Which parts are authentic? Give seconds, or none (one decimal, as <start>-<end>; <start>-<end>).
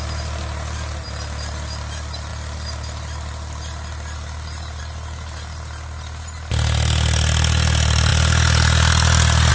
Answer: 0.0-9.5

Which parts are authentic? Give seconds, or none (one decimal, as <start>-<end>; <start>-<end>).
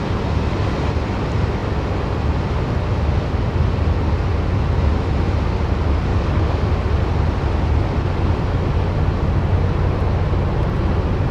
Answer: 0.0-6.1; 6.7-11.3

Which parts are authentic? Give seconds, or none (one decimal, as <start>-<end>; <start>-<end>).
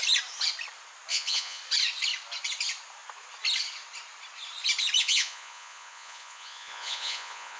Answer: 0.0-1.1; 1.6-5.0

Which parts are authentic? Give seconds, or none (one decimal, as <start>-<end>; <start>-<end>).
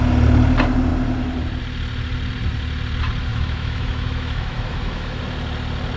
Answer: 0.0-3.3; 5.2-6.0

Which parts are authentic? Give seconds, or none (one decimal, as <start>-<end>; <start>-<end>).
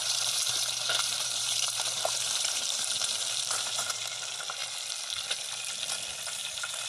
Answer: 4.1-6.4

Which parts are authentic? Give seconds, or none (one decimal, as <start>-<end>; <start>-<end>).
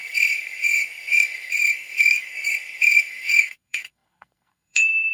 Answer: none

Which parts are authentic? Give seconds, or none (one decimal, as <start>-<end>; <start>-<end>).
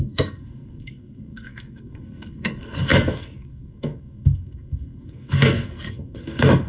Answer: none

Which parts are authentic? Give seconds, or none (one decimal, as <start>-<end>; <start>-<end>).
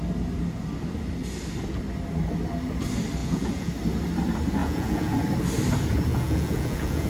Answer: 0.0-3.2; 3.7-4.6; 5.2-6.1